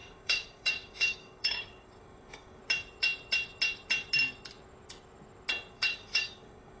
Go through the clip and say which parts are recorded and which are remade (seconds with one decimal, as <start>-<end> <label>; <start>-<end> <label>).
0.0-2.6 remade; 2.6-5.7 recorded; 5.7-6.8 remade